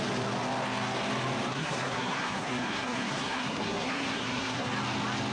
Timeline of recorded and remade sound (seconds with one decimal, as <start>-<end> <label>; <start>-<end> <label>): 0.0-1.5 recorded; 1.5-4.7 remade; 4.7-5.3 recorded